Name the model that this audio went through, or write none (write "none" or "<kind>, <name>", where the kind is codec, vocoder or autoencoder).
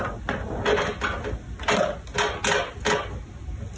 none